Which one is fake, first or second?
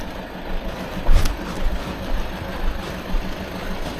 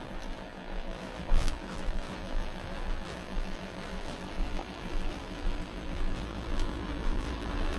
second